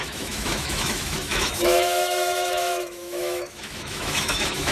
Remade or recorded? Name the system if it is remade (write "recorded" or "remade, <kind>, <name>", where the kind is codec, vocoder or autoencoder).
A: remade, autoencoder, DAC-VAE